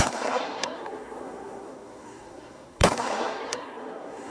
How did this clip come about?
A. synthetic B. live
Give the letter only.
A